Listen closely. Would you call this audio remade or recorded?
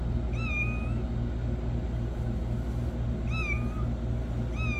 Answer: recorded